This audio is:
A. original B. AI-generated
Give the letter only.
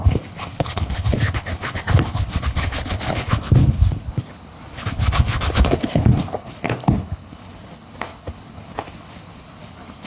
B